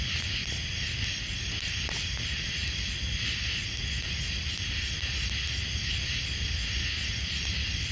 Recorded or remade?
recorded